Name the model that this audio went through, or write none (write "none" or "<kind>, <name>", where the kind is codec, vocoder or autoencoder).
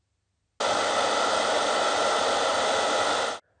none